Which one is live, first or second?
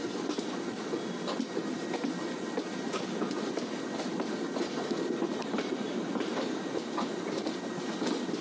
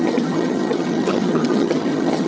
first